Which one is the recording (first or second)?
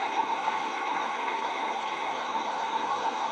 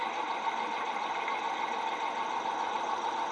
second